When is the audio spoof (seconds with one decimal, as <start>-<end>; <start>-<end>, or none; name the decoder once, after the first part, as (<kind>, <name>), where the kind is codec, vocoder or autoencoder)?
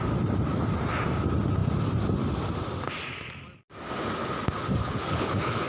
4.8-5.7 (codec, HILCodec)